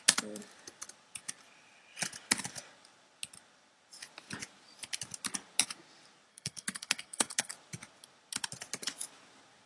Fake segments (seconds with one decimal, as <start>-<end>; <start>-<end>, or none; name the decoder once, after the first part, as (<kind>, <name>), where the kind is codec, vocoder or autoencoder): 6.3-7.5 (codec, SNAC)